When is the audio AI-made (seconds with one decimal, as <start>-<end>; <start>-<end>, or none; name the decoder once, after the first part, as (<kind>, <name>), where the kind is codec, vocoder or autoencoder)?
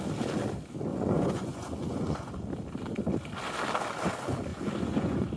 0.9-2.3 (vocoder, Vocos); 4.5-5.4